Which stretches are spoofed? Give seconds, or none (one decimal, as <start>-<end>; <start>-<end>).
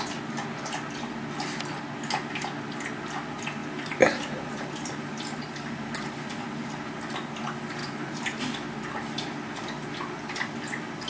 3.6-6.9; 7.8-8.4